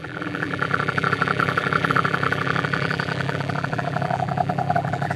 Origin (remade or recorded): remade